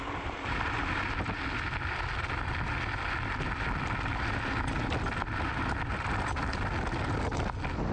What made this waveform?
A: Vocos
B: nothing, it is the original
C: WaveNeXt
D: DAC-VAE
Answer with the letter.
B